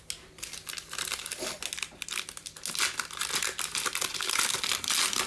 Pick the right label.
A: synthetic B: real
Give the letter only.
B